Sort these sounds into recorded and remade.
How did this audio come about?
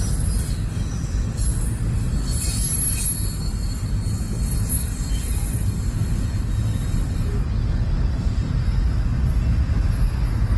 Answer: recorded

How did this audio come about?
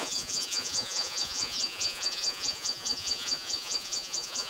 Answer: remade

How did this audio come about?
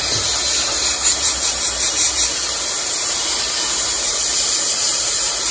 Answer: remade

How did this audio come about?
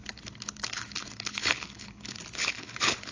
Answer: remade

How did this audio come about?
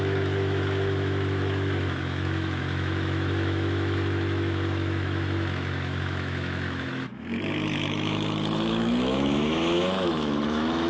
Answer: remade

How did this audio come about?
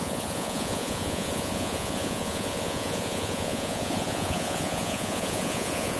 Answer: remade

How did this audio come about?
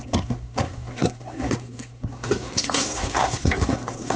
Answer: remade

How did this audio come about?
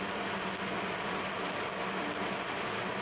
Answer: recorded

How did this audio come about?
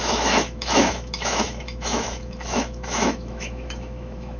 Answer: remade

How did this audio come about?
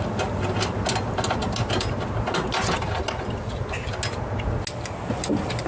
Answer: recorded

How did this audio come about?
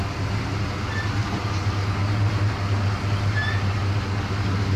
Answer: recorded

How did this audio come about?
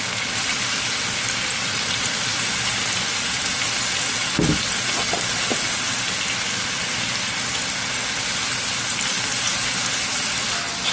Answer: recorded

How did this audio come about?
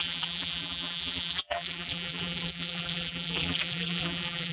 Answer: remade